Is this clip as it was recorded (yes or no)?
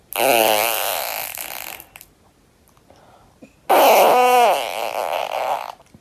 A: yes